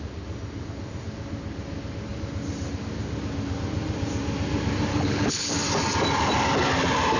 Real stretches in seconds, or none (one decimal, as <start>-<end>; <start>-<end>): 0.0-4.9; 5.5-7.2